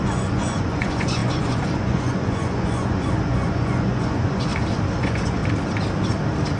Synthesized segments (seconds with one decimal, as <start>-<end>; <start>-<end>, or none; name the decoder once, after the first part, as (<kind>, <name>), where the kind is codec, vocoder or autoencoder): 0.0-4.5 (vocoder, Vocos); 5.0-5.4